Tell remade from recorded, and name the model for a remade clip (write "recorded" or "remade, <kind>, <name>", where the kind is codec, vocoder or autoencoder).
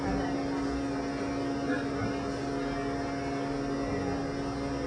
recorded